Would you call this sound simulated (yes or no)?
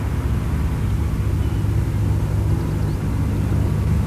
no